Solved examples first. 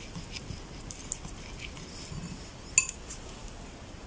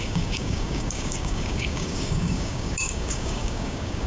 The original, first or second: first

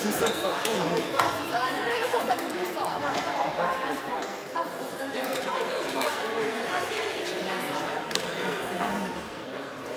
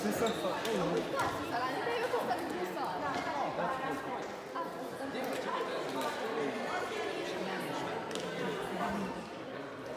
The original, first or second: second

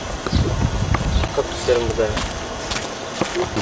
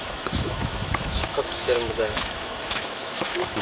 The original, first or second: first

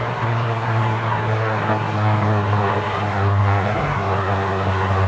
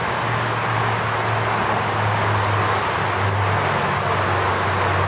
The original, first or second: second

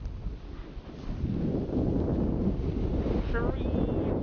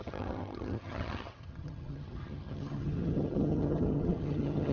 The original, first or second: first